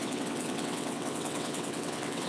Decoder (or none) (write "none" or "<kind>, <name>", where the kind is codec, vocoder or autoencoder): vocoder, WaveNeXt